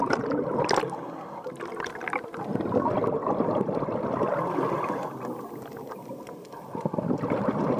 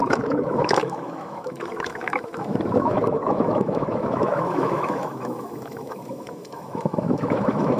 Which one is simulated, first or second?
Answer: second